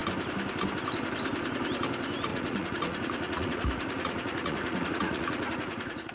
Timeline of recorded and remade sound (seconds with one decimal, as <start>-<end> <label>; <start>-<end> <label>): 0.0-2.3 recorded; 2.3-6.1 remade